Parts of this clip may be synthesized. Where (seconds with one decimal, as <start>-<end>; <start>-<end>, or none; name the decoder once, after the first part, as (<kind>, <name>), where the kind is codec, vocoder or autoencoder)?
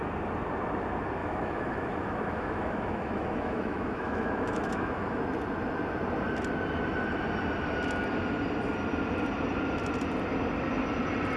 1.2-5.2 (autoencoder, DAC-VAE)